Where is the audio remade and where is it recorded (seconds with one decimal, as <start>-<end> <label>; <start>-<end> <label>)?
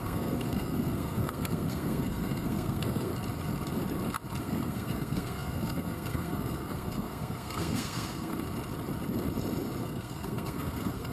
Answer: 0.0-3.1 remade; 3.1-4.4 recorded; 4.4-8.3 remade; 8.3-9.8 recorded; 9.8-11.1 remade